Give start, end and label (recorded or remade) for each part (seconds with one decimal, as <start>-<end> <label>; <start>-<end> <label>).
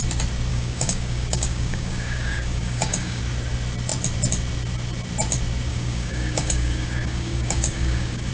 0.0-0.5 recorded; 0.5-3.2 remade; 3.2-5.7 recorded; 5.7-8.3 remade